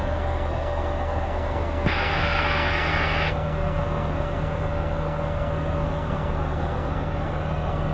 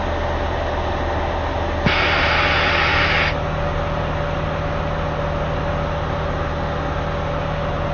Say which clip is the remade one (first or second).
first